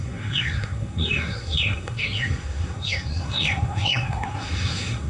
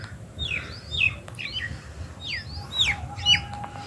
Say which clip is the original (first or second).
second